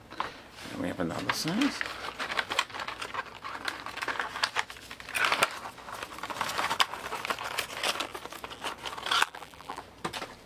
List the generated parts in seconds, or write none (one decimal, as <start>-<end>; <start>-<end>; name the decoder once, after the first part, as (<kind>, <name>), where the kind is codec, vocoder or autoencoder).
9.2-9.8 (vocoder, BigVGAN v2)